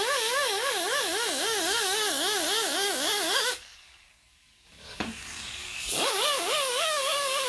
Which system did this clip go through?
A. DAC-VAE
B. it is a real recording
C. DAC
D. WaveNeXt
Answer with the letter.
C